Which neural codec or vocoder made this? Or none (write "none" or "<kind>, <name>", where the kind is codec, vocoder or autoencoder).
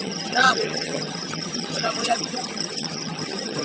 vocoder, HiFi-GAN